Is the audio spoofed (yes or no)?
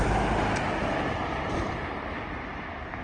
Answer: no